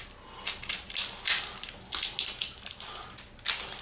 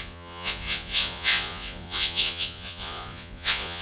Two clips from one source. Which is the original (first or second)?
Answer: first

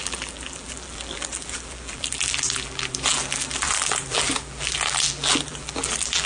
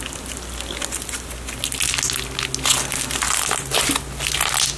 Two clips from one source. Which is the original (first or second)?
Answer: second